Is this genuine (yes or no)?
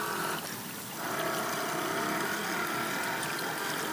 yes